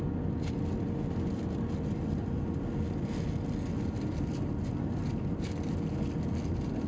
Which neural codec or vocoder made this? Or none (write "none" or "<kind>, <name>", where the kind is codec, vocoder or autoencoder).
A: none